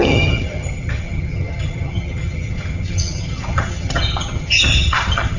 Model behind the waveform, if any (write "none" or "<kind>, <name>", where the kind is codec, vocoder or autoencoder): vocoder, HiFi-GAN